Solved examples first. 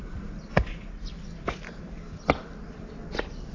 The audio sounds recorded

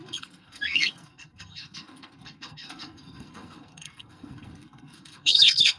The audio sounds remade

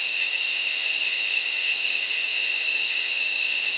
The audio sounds remade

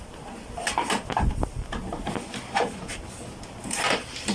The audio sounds recorded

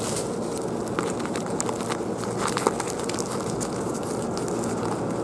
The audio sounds recorded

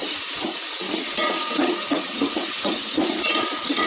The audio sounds remade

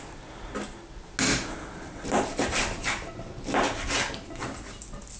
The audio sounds recorded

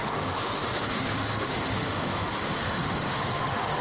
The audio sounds remade